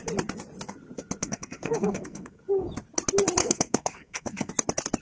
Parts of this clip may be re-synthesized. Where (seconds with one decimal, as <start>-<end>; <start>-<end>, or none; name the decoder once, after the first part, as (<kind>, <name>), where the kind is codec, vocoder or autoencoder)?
1.2-2.4 (codec, SNAC); 3.4-4.5